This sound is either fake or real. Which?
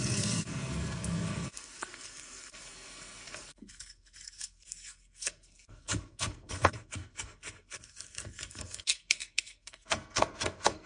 fake